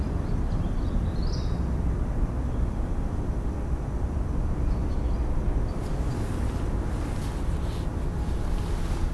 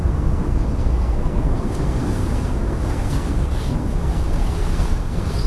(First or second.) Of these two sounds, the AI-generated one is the second